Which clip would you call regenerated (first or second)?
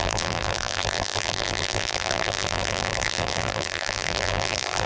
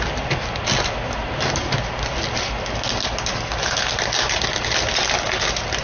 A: first